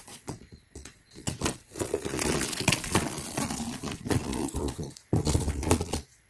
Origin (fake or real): fake